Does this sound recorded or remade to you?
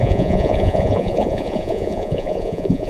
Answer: remade